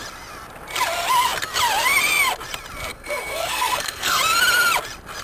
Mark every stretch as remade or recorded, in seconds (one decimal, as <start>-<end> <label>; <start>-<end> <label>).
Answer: 0.0-2.9 recorded; 2.9-4.2 remade; 4.2-5.2 recorded